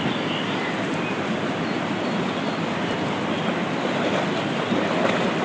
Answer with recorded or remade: recorded